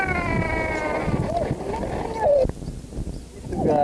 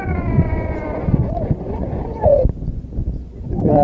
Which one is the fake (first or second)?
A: second